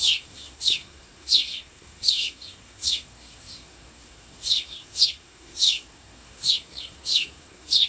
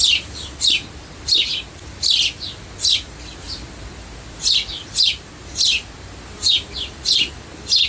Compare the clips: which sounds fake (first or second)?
first